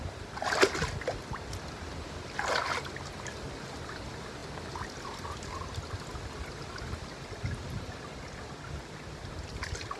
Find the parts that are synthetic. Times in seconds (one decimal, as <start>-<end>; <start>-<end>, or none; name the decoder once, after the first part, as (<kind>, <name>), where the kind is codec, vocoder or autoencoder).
none